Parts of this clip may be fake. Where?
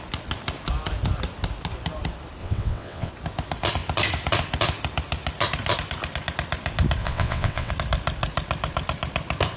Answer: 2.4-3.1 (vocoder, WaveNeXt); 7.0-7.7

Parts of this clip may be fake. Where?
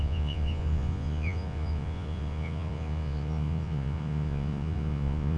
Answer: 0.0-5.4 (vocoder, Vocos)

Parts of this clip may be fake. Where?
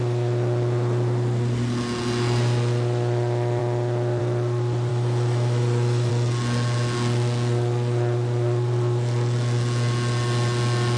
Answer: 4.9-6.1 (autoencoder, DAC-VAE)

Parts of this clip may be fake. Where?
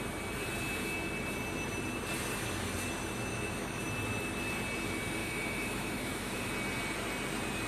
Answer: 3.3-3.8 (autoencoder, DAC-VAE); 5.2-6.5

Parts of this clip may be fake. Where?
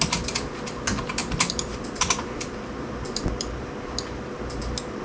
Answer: none